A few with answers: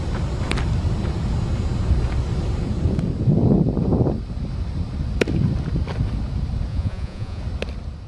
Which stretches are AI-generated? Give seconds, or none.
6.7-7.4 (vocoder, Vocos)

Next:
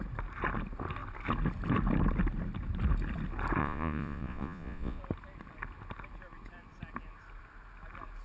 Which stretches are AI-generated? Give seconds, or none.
3.6-5.0 (vocoder, Vocos)

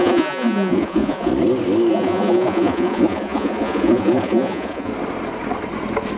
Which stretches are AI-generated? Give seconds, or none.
0.0-1.3 (vocoder, Vocos); 1.9-4.9

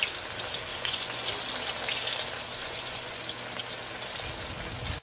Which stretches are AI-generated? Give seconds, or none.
0.7-1.3 (vocoder, Vocos); 2.5-3.2

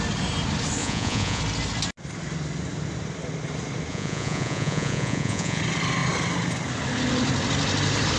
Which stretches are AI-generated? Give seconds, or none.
0.8-1.4 (vocoder, Vocos); 3.9-5.6

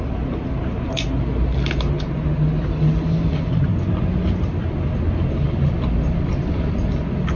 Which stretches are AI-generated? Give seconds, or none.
none